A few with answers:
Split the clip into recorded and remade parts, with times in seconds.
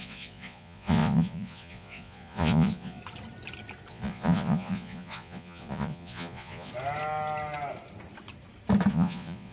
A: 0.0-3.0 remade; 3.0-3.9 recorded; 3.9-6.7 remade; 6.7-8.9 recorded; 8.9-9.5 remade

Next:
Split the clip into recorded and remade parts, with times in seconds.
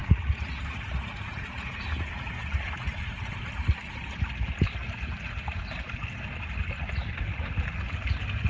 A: 0.0-3.3 remade; 3.3-8.5 recorded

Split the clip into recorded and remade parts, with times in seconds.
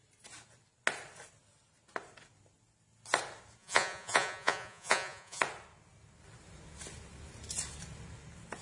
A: 0.0-3.6 recorded; 3.6-5.4 remade; 5.4-8.6 recorded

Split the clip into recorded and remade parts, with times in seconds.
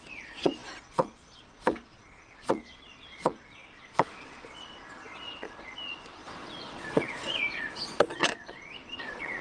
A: 0.0-9.4 remade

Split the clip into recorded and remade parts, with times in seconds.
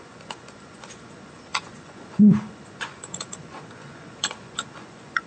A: 0.0-5.3 remade